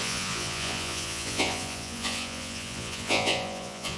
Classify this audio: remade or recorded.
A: remade